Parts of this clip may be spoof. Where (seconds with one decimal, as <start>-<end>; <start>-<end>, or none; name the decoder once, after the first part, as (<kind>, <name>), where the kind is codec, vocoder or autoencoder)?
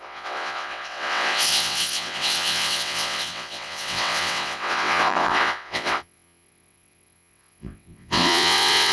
0.0-8.9 (vocoder, WaveNeXt)